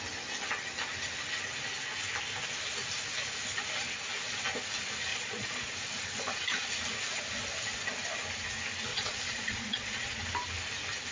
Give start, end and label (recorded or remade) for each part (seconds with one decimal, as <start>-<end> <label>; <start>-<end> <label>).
0.0-5.1 recorded; 5.1-5.7 remade; 5.7-8.9 recorded; 8.9-10.2 remade; 10.2-11.1 recorded